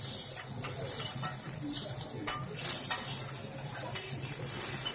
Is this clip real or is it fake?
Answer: real